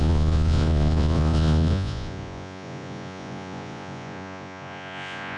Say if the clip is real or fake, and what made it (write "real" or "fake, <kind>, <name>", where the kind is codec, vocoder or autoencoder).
fake, vocoder, Vocos